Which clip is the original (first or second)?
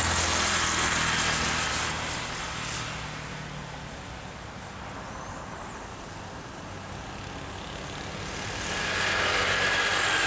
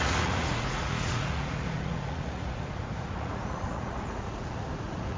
first